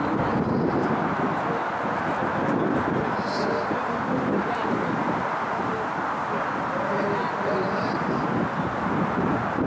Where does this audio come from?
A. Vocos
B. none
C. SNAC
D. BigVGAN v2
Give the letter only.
B